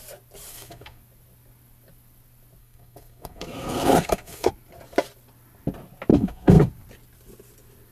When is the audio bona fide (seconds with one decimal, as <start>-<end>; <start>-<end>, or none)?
0.0-0.5; 1.0-2.6; 4.5-6.1; 6.7-7.9